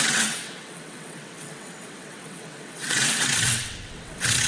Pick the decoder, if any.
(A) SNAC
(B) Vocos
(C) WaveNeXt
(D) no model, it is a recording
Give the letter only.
C